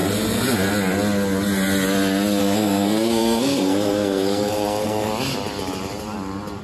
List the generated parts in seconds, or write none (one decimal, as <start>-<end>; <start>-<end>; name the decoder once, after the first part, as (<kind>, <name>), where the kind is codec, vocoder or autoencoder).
2.4-5.1 (codec, SNAC)